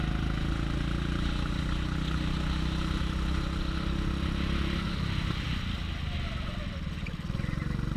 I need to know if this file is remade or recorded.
recorded